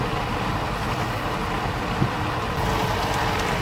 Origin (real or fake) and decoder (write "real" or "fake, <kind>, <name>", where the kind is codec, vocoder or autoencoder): real